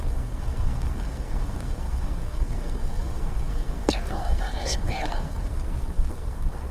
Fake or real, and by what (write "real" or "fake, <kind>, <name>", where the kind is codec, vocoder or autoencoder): fake, codec, SNAC